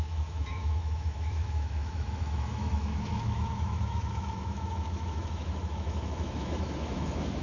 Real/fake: fake